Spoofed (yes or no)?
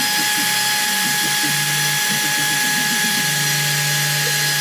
no